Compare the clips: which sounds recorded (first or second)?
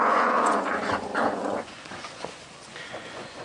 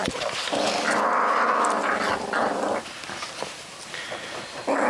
second